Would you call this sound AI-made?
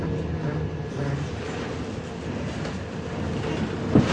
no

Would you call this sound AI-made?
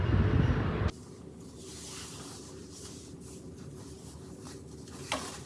no